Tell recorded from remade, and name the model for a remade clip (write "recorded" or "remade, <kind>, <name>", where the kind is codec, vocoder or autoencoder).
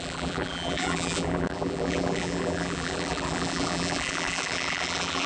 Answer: remade, vocoder, BigVGAN v2